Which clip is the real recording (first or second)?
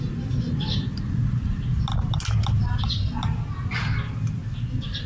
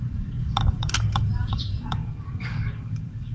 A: first